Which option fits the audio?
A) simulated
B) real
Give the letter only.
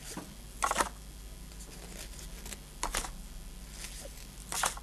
B